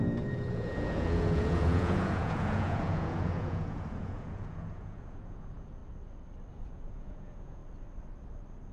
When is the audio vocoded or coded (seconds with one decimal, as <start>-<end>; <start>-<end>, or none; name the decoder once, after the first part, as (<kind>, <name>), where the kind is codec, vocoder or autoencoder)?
0.0-5.8 (vocoder, Vocos); 6.5-7.6